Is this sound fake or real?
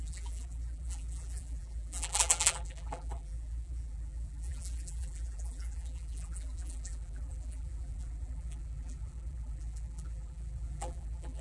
fake